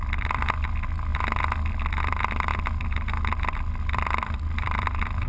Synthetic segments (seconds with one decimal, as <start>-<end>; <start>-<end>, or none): 0.0-1.1; 2.0-5.3